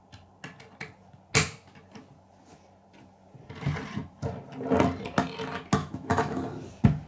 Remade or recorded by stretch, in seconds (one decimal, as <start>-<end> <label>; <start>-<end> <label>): 0.0-5.8 recorded; 5.8-6.4 remade; 6.4-7.1 recorded